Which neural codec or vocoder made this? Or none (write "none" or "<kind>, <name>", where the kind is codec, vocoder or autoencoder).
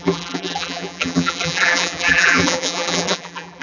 vocoder, BigVGAN v2